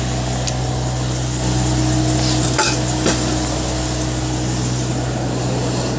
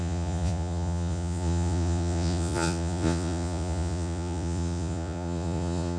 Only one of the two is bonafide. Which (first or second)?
first